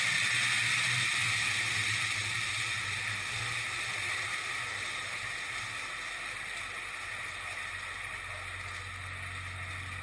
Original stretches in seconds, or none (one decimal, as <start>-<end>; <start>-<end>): 0.0-10.0